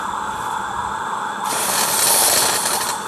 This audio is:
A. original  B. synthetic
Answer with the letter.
A